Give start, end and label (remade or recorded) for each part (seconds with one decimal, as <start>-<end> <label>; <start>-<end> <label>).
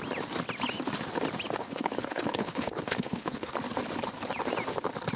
0.0-1.6 recorded; 1.6-3.5 remade; 3.5-5.2 recorded